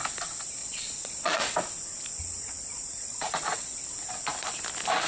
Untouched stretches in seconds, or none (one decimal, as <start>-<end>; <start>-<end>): 0.0-0.6; 1.5-2.1; 3.8-5.1